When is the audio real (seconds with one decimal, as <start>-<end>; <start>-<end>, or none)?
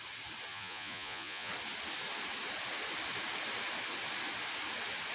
0.0-0.5; 1.5-5.1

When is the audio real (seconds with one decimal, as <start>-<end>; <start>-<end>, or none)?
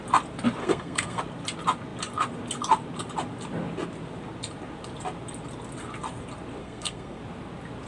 0.0-0.6; 1.2-6.6; 7.2-7.9